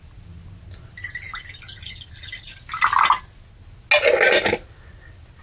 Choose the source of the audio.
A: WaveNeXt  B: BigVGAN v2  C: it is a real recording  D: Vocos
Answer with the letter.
C